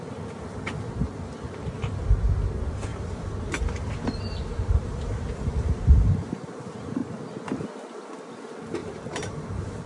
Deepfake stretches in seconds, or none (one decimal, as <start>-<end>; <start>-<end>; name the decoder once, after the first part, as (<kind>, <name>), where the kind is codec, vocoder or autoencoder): 2.9-6.6 (vocoder, BigVGAN v2); 8.8-9.9